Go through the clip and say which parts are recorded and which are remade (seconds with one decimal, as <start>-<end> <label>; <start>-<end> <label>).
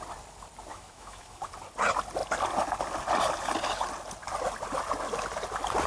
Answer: 0.0-0.7 recorded; 0.7-1.5 remade; 1.5-5.9 recorded